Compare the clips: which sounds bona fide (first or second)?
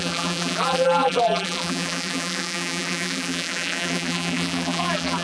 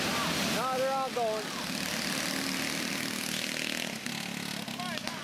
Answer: second